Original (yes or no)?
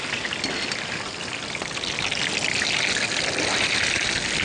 yes